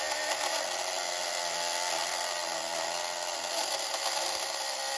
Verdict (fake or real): real